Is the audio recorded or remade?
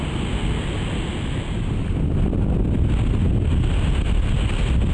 recorded